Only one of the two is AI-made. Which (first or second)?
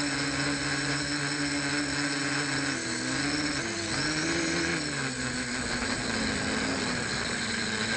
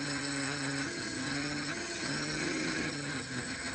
second